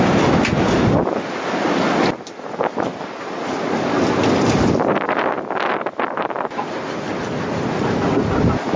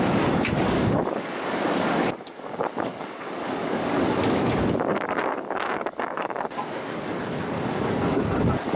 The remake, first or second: second